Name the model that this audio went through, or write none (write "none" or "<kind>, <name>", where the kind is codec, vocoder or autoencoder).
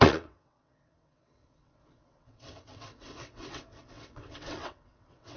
vocoder, WaveNeXt